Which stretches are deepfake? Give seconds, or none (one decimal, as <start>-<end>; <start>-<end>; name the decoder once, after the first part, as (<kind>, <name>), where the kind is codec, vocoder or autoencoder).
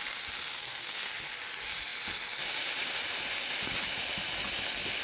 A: 0.5-1.1 (codec, SNAC)